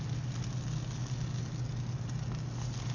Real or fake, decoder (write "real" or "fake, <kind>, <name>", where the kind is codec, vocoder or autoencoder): real